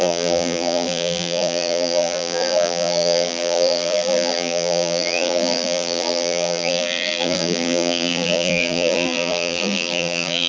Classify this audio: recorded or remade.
remade